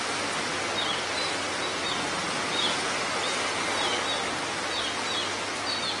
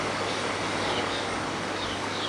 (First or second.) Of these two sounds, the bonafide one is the first